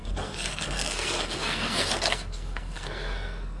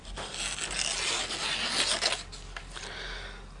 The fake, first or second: first